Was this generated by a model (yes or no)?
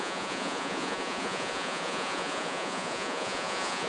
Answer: yes